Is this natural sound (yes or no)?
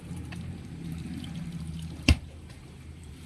no